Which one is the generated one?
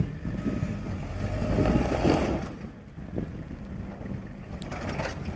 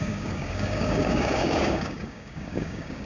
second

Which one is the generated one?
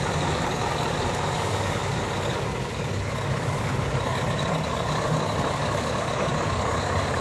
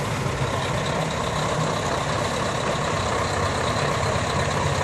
first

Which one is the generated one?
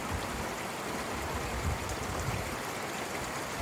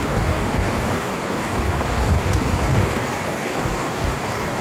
second